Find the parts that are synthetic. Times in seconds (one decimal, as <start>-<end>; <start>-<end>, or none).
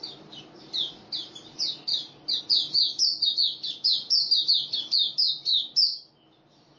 none